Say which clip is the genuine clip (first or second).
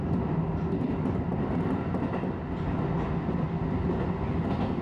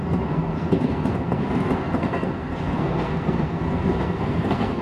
first